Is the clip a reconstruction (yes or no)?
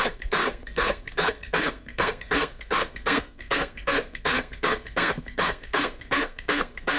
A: yes